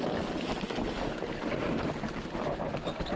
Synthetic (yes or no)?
no